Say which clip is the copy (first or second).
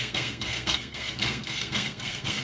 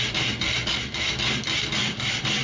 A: first